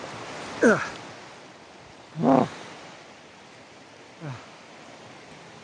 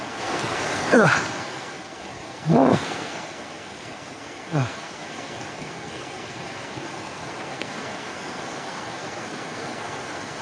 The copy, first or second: second